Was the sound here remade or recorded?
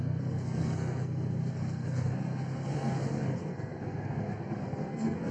remade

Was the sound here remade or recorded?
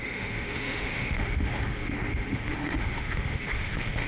remade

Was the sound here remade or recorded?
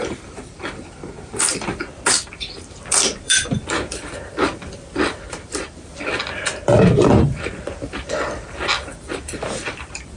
remade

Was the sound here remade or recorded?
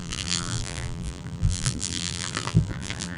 remade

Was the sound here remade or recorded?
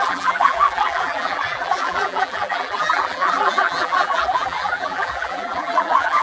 remade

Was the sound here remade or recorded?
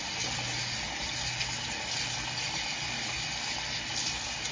recorded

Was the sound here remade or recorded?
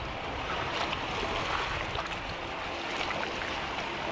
recorded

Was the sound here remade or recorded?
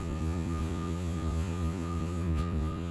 remade